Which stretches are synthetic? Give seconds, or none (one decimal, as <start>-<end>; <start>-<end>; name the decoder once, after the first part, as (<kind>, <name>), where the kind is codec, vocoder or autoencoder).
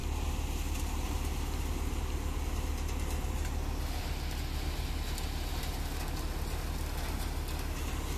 none